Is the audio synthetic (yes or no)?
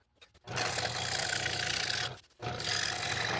no